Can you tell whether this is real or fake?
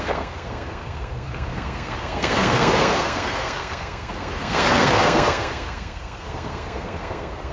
fake